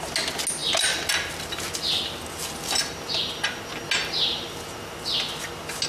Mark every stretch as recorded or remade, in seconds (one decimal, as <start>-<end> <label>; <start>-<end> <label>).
0.0-5.9 recorded